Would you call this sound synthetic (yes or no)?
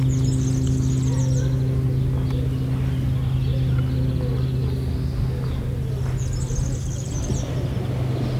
no